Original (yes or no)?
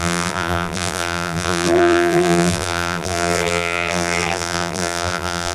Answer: no